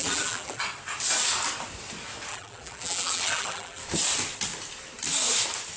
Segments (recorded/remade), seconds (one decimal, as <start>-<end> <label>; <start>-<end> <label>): 0.0-0.6 remade; 0.6-2.3 recorded; 2.3-3.8 remade; 3.8-5.8 recorded